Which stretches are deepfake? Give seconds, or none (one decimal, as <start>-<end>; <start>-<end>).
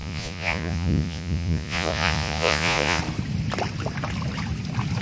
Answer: 0.0-3.0